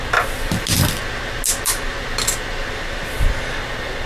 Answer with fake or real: real